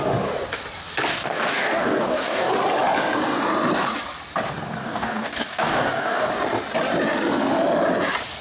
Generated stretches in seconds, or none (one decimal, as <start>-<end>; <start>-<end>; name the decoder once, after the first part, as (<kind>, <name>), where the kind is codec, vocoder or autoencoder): 1.1-2.5 (codec, DAC); 4.8-6.3